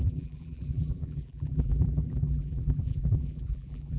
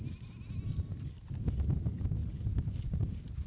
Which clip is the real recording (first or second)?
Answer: second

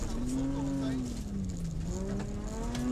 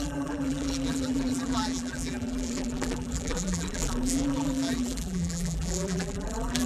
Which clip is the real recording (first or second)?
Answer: first